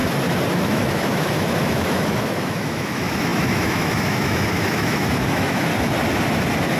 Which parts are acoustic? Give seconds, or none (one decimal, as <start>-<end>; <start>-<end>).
0.0-0.5; 5.7-6.8